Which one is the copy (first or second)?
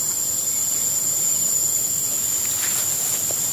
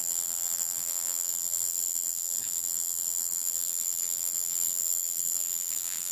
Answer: second